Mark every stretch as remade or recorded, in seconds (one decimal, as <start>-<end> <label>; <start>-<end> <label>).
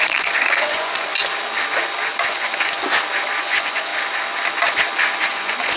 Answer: 0.0-1.1 remade; 1.1-2.3 recorded; 2.3-2.8 remade; 2.8-3.4 recorded; 3.4-3.9 remade; 3.9-5.3 recorded; 5.3-5.8 remade